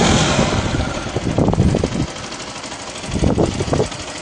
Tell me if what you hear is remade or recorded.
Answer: recorded